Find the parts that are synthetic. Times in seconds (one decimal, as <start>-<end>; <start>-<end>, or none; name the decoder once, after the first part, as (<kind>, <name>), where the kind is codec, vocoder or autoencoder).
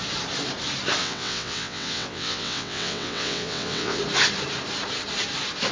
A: 1.0-4.0 (vocoder, WaveNeXt)